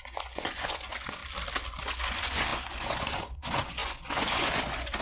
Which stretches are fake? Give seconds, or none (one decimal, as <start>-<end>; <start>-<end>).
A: 0.0-1.2; 1.8-5.0